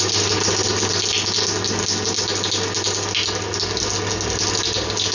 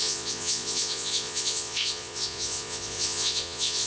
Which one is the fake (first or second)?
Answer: second